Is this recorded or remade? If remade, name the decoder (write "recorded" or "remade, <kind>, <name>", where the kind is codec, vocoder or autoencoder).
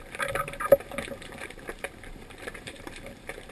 remade, vocoder, BigVGAN v2